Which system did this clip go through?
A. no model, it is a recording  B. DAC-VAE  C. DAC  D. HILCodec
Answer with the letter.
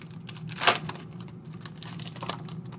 A